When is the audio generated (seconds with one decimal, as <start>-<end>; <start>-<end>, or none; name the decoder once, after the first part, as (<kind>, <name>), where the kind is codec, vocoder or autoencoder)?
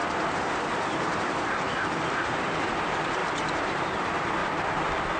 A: 0.0-1.2 (vocoder, BigVGAN v2); 3.2-3.8